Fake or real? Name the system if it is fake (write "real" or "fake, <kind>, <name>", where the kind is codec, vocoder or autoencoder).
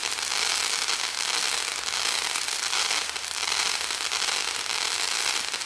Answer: real